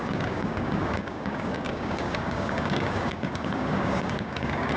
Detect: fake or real fake